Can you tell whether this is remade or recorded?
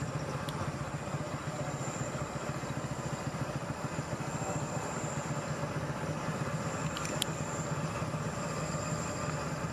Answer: recorded